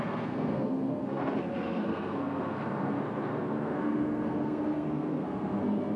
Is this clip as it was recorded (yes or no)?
no